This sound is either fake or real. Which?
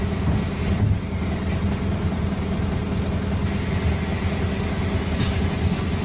real